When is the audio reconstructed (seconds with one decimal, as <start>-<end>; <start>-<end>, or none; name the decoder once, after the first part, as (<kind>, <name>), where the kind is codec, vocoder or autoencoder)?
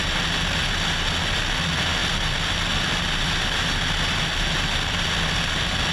none